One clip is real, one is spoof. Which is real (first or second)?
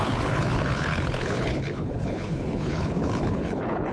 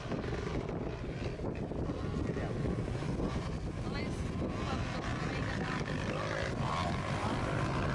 second